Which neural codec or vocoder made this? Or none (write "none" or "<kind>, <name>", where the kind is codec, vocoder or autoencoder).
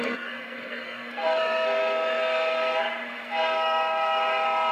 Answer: codec, SNAC